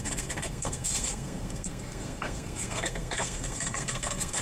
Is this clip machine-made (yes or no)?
yes